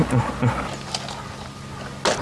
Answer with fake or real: real